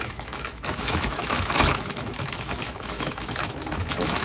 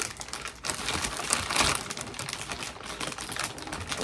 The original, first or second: second